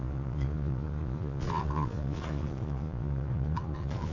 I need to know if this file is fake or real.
fake